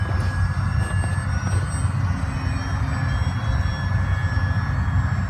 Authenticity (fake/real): real